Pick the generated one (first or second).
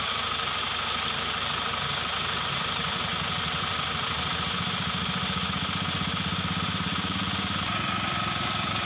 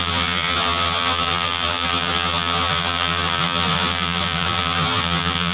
second